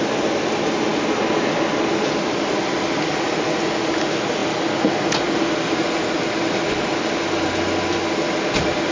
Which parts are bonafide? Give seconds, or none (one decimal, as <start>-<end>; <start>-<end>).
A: 0.0-8.9